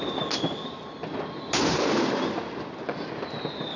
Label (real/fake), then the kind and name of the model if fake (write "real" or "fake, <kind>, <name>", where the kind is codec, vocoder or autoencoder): real